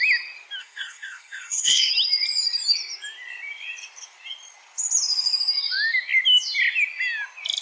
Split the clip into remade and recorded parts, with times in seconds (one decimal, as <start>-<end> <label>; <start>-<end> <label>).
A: 0.0-0.6 recorded; 0.6-1.9 remade; 1.9-7.6 recorded